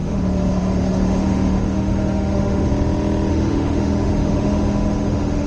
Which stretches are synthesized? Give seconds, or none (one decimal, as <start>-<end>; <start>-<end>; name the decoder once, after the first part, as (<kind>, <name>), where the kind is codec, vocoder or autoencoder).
0.0-2.7 (autoencoder, DAC-VAE); 3.3-5.5